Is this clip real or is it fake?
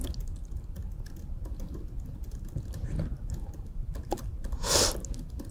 real